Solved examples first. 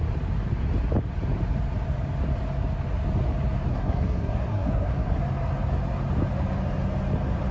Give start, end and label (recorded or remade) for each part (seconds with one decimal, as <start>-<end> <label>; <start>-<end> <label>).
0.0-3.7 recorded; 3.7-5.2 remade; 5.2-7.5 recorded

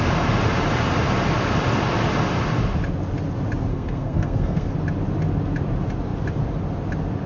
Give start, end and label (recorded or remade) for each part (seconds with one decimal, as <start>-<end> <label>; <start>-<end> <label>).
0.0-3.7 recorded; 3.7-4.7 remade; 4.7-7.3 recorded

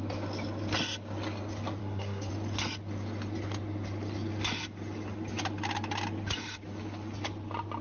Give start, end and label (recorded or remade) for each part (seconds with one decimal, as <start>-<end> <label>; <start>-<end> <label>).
0.0-1.8 recorded; 1.8-2.3 remade; 2.3-7.8 recorded